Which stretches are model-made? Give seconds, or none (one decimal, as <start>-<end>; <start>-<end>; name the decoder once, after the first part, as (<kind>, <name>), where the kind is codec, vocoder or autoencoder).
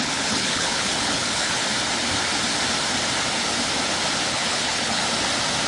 0.0-1.6 (codec, HILCodec); 4.3-5.0